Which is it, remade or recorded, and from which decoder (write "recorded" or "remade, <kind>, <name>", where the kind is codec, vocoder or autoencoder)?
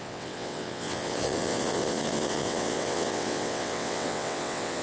remade, vocoder, WaveNeXt